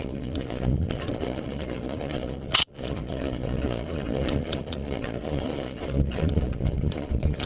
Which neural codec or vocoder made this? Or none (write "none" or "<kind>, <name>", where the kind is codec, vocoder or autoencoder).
vocoder, Vocos